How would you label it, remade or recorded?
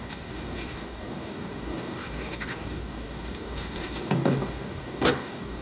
remade